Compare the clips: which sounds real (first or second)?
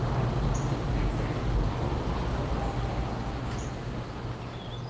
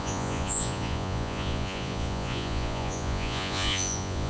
first